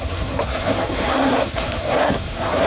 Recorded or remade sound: remade